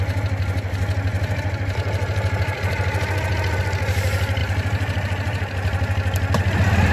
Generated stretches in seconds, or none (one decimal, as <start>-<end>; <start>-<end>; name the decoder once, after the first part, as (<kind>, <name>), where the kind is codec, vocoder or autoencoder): none